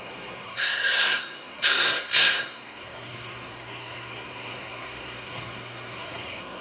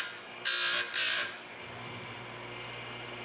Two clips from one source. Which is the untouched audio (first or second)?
second